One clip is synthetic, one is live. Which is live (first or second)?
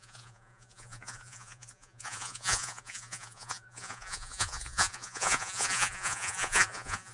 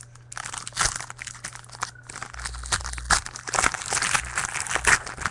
second